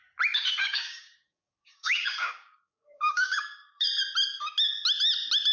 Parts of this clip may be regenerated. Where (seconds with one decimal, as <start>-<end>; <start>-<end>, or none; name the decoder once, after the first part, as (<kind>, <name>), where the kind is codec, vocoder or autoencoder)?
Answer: 0.6-3.9 (codec, DAC)